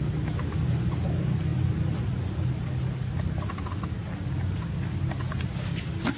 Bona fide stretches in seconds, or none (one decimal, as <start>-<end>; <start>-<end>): 0.0-6.2

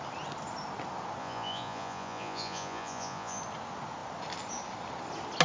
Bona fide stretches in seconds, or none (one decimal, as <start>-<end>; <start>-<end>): 0.0-1.2; 3.4-5.4

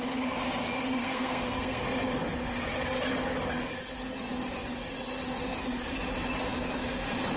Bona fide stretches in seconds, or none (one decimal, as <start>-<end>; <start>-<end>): 0.0-1.0; 1.8-7.4

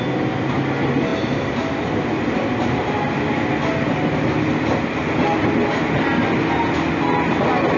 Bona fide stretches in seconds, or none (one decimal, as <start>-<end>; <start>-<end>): 0.0-7.8

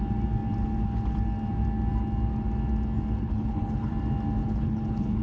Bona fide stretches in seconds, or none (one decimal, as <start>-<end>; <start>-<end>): 0.0-3.2; 3.9-4.4

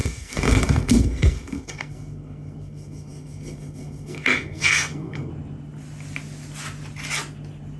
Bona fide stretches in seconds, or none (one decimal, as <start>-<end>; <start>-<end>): 5.3-7.8